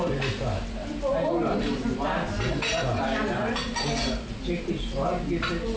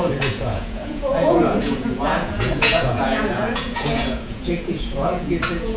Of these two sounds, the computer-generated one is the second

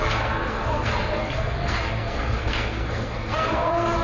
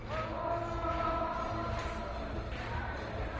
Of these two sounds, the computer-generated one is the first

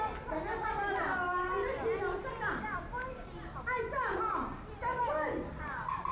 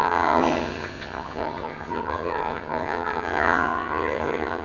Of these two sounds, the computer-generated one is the second